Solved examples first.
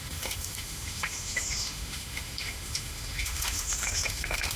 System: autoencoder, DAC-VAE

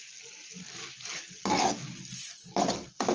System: none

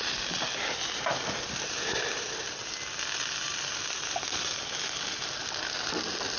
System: none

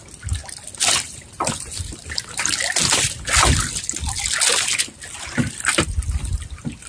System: none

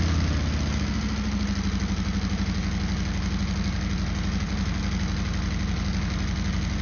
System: none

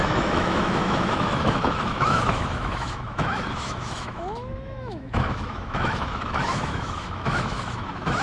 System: autoencoder, DAC-VAE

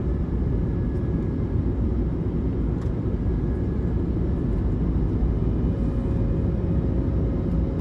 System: none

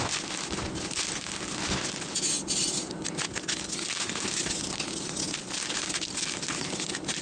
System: none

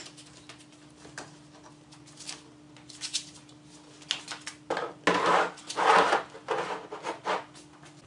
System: none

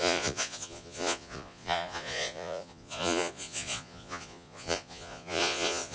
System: vocoder, Vocos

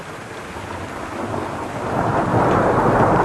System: none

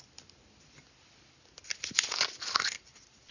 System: none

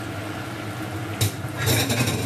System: none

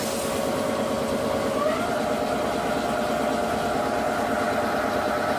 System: none